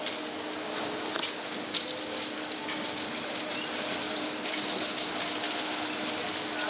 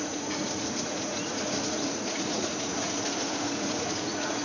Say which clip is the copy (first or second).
second